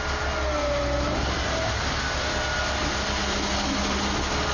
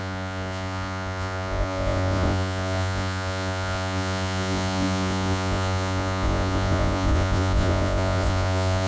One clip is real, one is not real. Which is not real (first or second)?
second